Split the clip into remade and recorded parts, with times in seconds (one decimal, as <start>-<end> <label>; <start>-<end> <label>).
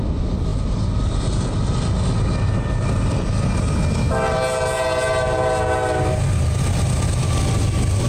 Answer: 0.0-8.1 recorded